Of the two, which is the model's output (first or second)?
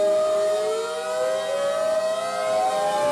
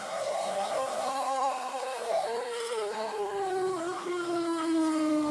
second